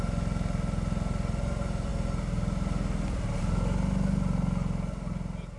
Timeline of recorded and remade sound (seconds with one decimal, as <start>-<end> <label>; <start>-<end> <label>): 0.0-5.6 recorded